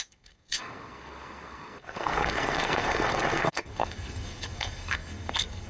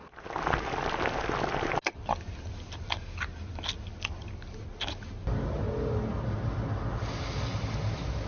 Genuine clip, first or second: second